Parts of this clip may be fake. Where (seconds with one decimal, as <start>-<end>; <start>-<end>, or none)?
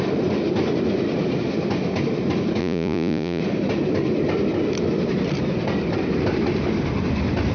2.6-3.4